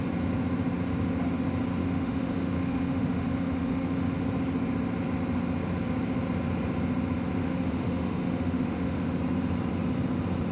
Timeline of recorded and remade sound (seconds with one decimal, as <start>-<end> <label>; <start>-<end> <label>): 0.0-1.8 recorded; 1.8-4.1 remade; 4.1-7.4 recorded; 7.4-9.2 remade; 9.2-10.5 recorded